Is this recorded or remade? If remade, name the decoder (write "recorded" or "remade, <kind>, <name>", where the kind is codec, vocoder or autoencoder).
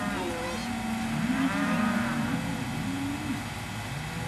recorded